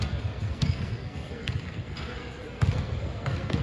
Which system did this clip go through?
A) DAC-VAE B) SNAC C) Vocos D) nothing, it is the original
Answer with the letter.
B